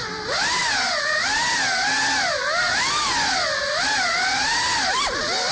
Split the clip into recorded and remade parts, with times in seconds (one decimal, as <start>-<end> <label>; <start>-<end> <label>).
0.0-5.5 recorded

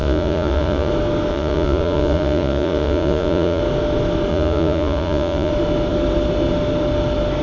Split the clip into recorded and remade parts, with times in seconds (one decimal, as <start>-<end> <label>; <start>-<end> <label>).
0.0-0.9 remade; 0.9-1.3 recorded; 1.3-3.6 remade; 3.6-4.3 recorded; 4.3-5.5 remade; 5.5-7.4 recorded